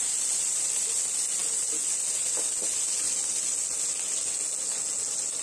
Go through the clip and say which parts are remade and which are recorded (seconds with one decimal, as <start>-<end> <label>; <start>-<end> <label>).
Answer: 0.0-5.4 recorded